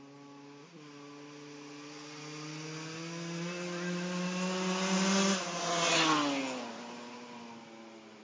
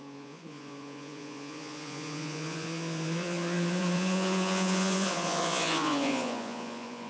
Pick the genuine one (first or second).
first